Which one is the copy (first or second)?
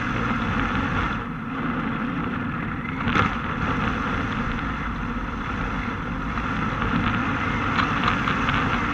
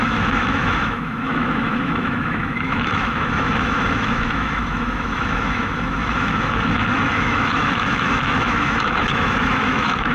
second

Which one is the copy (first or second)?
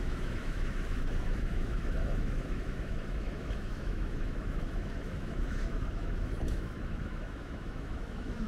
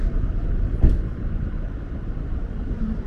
first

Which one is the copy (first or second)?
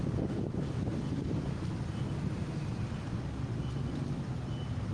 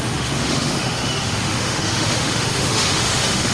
second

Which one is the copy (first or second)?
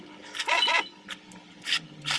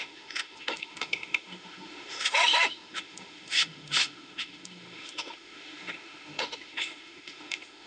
second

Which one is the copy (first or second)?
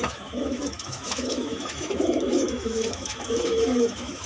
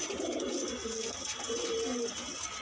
first